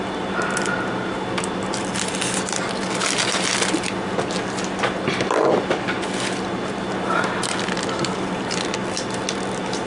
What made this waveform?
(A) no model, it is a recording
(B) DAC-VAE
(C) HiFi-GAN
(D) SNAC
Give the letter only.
A